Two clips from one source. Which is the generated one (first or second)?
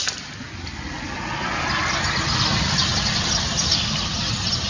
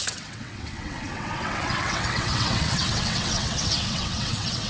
second